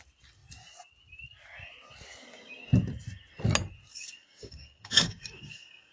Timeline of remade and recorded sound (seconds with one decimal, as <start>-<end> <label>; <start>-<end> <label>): 0.0-3.9 recorded; 3.9-5.9 remade